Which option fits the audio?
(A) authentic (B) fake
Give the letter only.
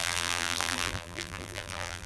B